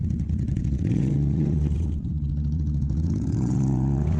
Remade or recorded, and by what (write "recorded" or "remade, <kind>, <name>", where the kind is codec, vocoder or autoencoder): remade, vocoder, WaveNeXt